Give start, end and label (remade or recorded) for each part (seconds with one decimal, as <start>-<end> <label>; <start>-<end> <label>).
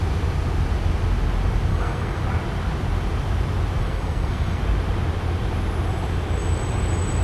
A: 0.0-1.7 recorded; 1.7-2.2 remade; 2.2-3.8 recorded; 3.8-4.6 remade; 4.6-7.2 recorded